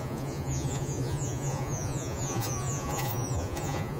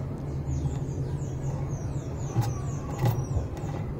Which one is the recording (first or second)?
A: second